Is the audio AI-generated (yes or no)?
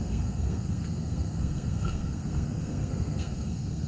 yes